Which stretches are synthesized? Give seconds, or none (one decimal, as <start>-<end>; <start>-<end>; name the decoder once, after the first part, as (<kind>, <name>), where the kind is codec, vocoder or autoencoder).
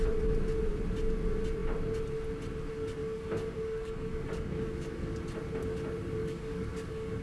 3.0-5.1 (codec, DAC); 6.2-7.2